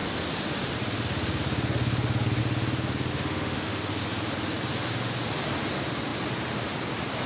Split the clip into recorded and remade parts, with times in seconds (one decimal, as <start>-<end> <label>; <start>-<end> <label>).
0.0-3.1 recorded; 3.1-3.9 remade; 3.9-7.3 recorded